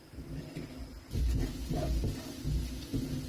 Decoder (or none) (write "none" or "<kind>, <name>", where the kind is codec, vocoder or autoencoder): none